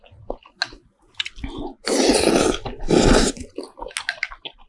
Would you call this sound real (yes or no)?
yes